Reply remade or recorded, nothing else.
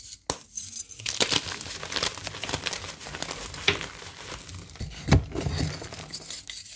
recorded